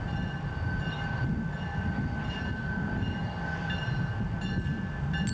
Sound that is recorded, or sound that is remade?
recorded